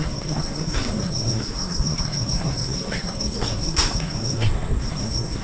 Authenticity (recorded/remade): remade